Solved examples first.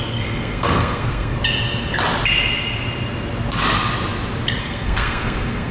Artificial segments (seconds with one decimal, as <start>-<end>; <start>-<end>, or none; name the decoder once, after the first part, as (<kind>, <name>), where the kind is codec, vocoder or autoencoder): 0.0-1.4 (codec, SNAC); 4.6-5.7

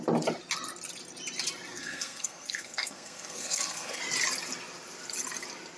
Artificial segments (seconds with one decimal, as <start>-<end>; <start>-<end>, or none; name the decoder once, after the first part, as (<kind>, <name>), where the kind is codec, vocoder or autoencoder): 1.7-4.0 (codec, SNAC)

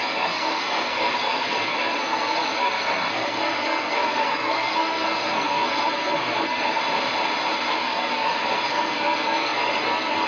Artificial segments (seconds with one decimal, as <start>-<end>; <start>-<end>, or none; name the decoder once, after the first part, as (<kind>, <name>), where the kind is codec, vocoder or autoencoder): 0.0-6.8 (codec, SNAC); 7.7-10.3

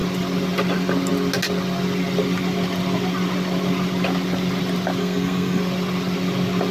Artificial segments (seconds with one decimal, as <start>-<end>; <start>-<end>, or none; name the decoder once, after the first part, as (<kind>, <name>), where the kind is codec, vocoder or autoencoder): 5.0-5.6 (codec, SNAC)

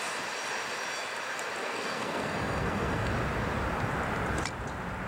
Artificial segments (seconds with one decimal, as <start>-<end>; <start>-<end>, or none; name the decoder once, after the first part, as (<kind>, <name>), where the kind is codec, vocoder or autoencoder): 1.6-3.1 (codec, SNAC)

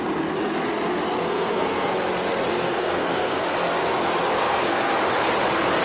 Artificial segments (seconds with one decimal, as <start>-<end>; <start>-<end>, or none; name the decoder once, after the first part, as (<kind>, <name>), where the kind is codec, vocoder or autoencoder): 1.2-1.9 (codec, SNAC); 2.5-3.4; 4.4-4.9